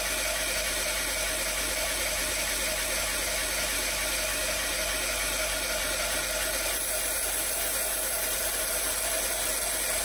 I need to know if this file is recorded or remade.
recorded